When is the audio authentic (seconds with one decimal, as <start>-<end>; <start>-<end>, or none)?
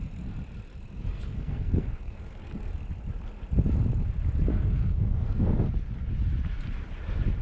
0.0-1.1; 2.7-4.5; 5.7-7.4